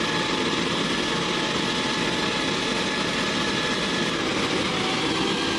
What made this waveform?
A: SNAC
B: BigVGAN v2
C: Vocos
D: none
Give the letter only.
D